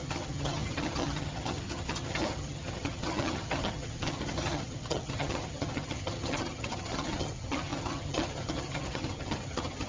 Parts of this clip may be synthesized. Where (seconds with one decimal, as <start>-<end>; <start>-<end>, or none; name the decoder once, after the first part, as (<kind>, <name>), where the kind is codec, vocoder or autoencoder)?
0.0-9.9 (vocoder, HiFi-GAN)